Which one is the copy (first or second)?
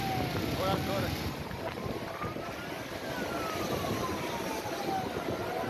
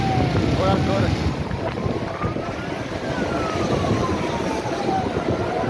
second